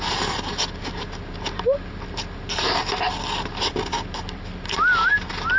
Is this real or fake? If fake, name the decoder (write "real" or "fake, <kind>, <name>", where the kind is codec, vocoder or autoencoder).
real